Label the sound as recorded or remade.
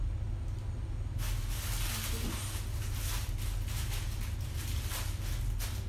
recorded